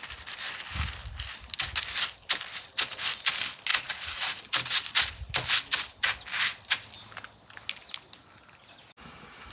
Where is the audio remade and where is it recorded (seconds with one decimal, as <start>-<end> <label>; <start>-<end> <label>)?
0.0-3.7 recorded; 3.7-4.4 remade; 4.4-9.5 recorded